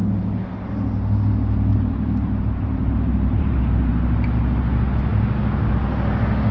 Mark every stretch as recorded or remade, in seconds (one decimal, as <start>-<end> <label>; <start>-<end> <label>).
0.0-1.7 recorded; 1.7-3.9 remade; 3.9-6.5 recorded